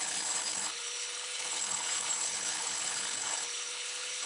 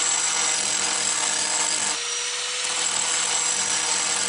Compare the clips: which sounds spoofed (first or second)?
first